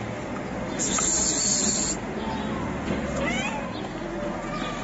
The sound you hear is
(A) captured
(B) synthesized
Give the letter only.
A